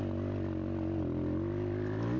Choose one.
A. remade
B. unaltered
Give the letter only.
B